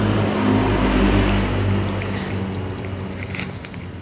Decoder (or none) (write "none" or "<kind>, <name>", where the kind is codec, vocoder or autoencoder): none